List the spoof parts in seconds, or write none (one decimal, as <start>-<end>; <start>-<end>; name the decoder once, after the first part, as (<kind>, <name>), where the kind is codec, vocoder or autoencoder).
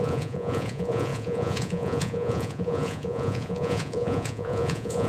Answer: 0.0-5.1 (vocoder, Vocos)